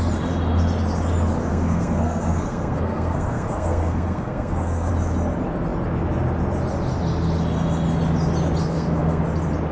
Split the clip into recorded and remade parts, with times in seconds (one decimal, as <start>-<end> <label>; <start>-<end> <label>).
0.0-1.5 recorded; 1.5-4.9 remade; 4.9-8.6 recorded; 8.6-9.2 remade; 9.2-9.7 recorded